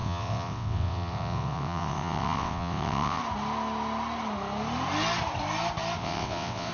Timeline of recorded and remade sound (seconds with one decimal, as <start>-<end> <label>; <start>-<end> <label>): 0.0-3.2 remade; 3.2-6.0 recorded; 6.0-6.7 remade